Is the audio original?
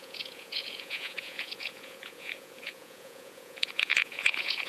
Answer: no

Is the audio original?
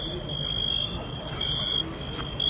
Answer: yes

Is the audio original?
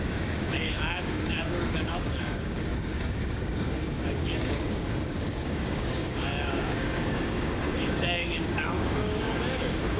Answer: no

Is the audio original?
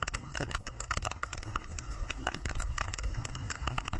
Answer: no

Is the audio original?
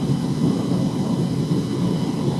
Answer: yes